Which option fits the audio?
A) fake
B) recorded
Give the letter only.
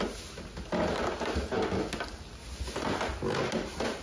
B